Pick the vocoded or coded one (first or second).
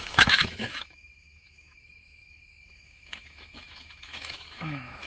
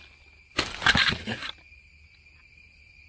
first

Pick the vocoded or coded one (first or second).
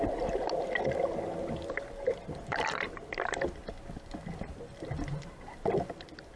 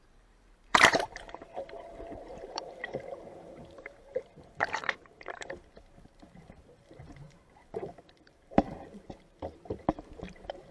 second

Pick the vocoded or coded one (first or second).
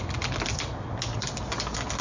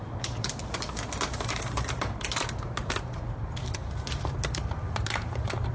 second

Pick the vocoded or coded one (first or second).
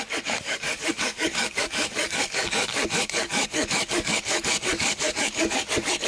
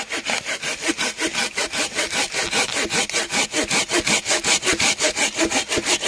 first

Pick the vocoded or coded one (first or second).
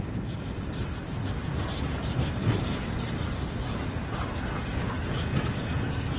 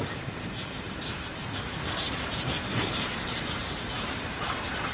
second